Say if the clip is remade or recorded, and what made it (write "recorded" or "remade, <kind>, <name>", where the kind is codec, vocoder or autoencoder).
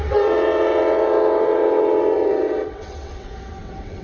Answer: remade, vocoder, WaveNeXt